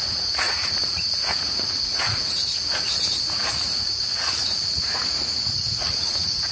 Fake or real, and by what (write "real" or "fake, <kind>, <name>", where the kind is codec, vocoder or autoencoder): fake, vocoder, Vocos